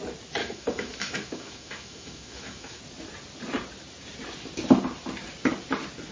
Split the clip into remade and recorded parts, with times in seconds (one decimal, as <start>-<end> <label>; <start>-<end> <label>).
0.0-0.4 recorded; 0.4-2.8 remade; 2.8-6.1 recorded